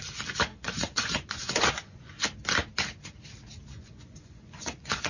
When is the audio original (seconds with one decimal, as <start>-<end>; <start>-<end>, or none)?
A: 0.0-0.5; 2.2-3.7